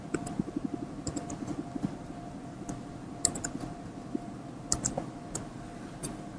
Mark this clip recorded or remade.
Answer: recorded